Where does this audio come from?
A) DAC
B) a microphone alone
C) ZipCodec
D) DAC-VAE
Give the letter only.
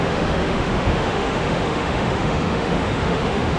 D